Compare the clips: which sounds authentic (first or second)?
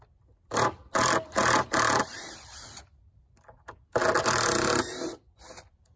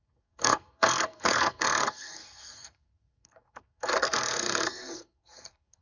first